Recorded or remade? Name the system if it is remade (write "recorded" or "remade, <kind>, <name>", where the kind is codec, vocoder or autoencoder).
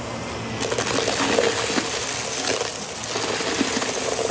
recorded